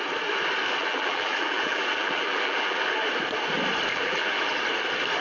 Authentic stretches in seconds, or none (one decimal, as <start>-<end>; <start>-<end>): 0.0-0.8; 3.1-3.9; 4.6-5.2